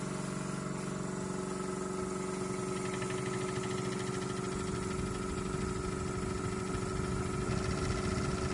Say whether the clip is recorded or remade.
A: recorded